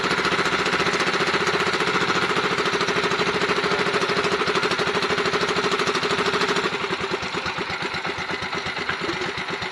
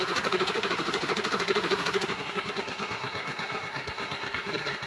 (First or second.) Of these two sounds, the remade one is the second